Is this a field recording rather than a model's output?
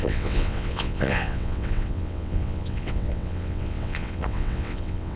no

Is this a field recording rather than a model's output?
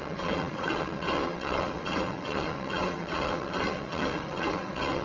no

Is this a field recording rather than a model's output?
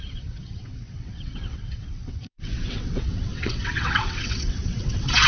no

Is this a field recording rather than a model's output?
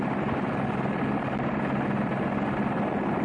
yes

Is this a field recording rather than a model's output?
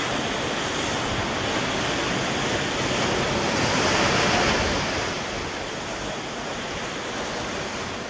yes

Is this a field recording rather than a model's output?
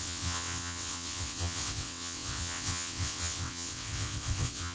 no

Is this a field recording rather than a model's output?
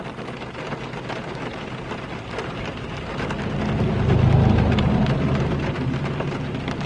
yes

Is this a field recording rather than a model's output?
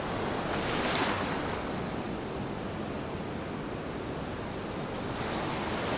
yes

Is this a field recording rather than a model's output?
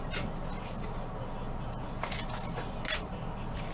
yes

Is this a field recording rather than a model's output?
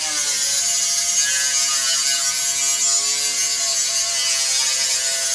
yes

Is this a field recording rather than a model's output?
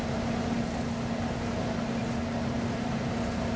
yes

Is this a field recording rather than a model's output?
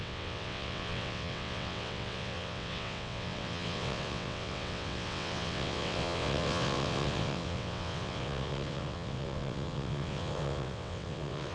no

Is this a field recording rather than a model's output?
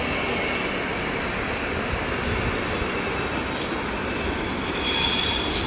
yes